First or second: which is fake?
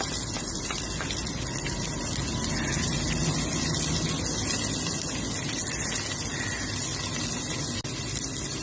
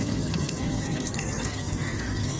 second